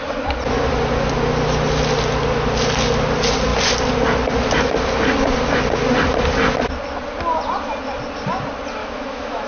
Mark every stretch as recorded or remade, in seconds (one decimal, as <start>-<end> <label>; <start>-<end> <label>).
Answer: 0.0-8.8 recorded; 8.8-9.5 remade